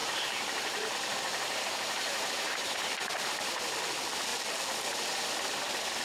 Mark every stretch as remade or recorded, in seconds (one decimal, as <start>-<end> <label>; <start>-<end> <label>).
0.0-3.1 remade; 3.1-6.0 recorded